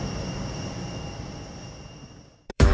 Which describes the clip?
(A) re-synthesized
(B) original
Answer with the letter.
A